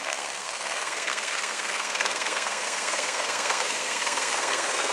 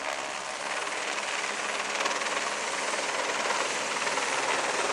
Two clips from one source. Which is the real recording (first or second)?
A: second